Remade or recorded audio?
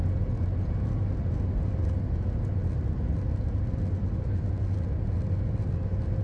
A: recorded